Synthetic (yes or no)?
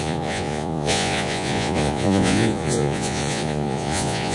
yes